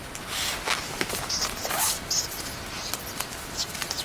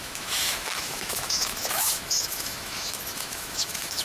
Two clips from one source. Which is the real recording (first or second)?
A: first